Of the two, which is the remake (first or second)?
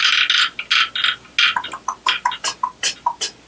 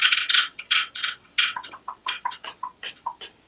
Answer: second